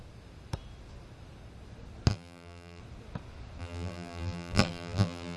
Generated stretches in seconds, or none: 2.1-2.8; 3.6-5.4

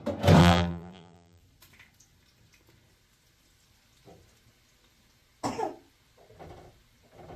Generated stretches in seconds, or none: 0.4-1.4